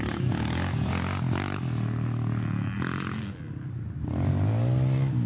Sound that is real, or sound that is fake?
real